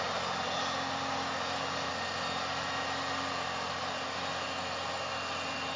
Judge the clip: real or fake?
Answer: real